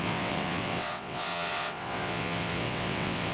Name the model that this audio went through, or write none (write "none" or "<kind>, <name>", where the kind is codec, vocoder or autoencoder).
vocoder, WaveNeXt